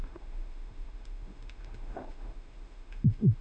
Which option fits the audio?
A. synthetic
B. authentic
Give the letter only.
A